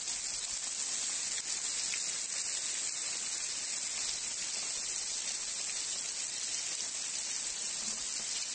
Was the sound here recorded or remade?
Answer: recorded